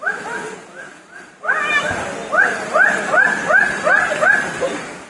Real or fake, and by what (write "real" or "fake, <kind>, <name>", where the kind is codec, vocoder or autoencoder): real